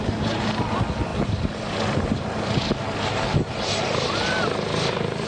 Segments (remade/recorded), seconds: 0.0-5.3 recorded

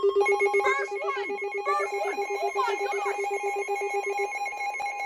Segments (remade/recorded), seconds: 0.0-4.5 recorded; 4.5-5.1 remade

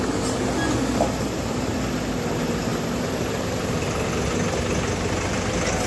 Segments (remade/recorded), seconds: 0.0-2.7 recorded; 2.7-3.6 remade; 3.6-5.9 recorded

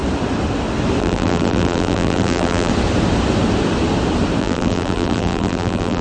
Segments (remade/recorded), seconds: 0.0-1.0 recorded; 1.0-2.7 remade; 2.7-4.4 recorded; 4.4-6.0 remade

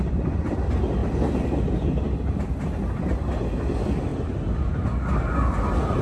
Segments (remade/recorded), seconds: 0.0-1.0 recorded; 1.0-2.5 remade; 2.5-4.1 recorded; 4.1-4.7 remade; 4.7-6.0 recorded

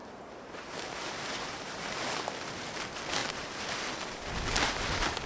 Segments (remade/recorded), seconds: 0.0-2.0 remade; 2.0-3.2 recorded; 3.2-3.7 remade; 3.7-5.3 recorded